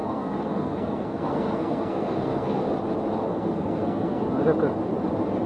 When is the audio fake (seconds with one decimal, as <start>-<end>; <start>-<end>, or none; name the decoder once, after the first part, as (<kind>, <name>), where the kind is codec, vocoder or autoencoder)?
0.0-2.6 (codec, SNAC); 3.3-4.2